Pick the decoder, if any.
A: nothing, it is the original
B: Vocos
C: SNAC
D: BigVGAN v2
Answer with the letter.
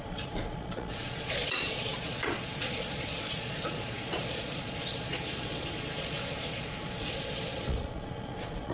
B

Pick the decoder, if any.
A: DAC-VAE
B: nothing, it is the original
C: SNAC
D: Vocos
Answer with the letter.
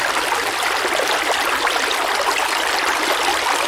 B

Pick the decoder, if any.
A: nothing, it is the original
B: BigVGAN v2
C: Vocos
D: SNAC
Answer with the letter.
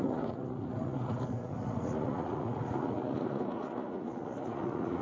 C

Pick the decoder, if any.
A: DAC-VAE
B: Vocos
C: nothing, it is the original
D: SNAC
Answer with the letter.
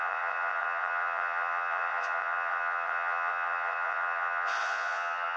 B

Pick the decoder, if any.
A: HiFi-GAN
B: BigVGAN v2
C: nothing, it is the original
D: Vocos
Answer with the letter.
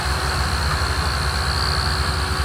C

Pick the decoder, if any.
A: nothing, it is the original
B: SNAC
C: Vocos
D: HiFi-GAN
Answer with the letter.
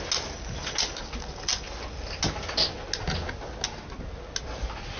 A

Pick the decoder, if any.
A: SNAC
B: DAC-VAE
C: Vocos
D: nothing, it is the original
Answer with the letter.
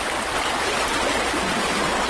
D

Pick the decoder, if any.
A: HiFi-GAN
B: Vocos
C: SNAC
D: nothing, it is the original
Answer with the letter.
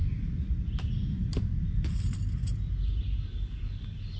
D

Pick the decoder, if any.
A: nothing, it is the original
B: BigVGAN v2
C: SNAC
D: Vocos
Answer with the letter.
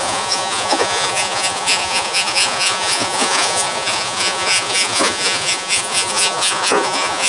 D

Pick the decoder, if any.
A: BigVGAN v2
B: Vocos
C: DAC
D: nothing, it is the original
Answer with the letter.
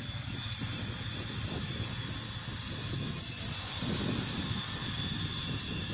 D